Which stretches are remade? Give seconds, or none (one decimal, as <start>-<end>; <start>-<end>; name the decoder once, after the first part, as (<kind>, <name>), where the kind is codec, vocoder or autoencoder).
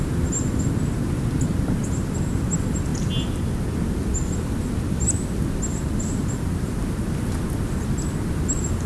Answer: none